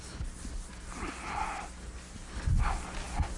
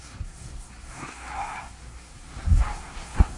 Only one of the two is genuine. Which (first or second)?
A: first